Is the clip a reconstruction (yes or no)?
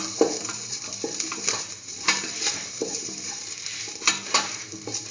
yes